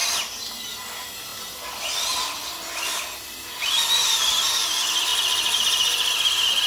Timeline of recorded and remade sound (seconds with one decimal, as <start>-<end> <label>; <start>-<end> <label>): 0.0-0.7 remade; 0.7-5.1 recorded; 5.1-6.7 remade